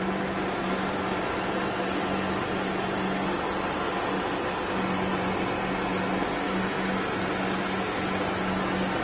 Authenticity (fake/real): real